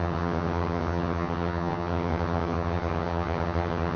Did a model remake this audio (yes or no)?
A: yes